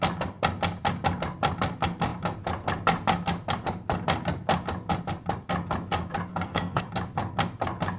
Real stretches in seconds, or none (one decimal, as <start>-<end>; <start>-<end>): 0.0-6.3; 6.8-8.0